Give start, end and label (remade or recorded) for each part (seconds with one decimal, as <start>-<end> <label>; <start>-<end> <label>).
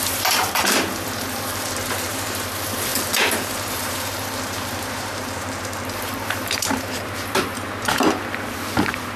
0.0-9.2 remade